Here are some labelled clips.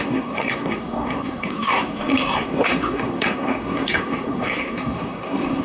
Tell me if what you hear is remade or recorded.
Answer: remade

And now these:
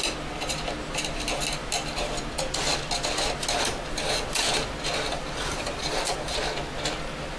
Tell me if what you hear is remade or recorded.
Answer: recorded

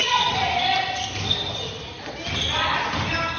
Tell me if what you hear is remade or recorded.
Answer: recorded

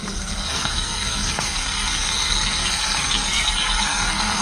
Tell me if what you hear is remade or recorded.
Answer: remade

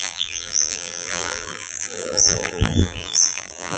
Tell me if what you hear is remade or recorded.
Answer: remade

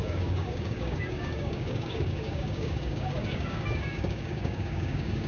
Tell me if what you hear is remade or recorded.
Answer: remade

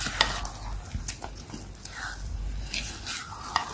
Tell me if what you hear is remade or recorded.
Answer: recorded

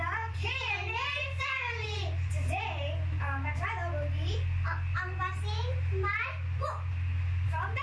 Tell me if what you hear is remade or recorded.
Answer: recorded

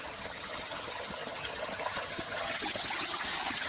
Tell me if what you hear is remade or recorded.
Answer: remade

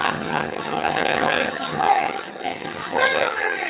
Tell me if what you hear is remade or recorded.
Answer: remade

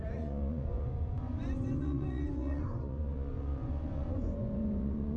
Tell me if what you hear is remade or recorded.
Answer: remade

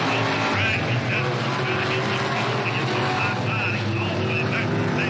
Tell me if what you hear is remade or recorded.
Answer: recorded